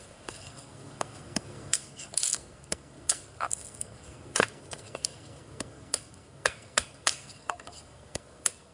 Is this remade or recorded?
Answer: remade